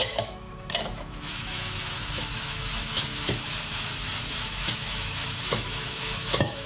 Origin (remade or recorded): remade